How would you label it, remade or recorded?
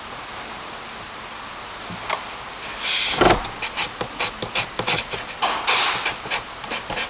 recorded